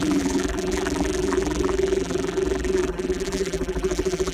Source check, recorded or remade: remade